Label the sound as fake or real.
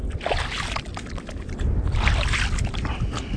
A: real